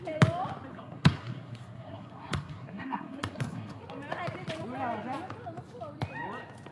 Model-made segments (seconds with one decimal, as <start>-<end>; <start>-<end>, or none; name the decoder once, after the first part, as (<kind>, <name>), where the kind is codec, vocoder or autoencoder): 0.7-3.8 (codec, SNAC)